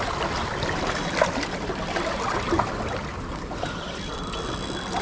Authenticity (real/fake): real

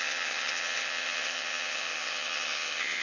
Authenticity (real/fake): fake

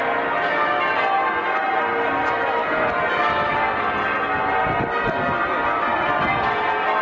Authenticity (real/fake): real